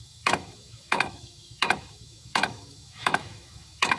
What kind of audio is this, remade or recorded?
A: remade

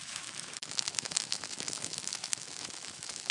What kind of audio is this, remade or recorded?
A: remade